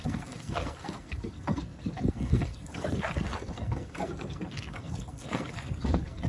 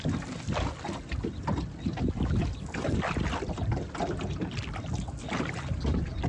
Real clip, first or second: second